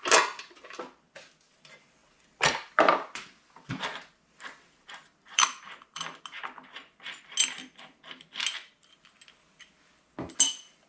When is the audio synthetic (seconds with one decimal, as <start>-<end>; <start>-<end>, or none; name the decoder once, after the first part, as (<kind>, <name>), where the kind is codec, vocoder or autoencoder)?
2.0-6.2 (vocoder, BigVGAN v2)